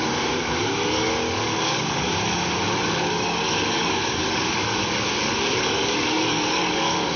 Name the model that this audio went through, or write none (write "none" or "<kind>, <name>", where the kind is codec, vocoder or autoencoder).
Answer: codec, DAC